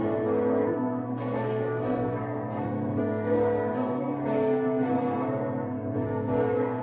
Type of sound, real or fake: fake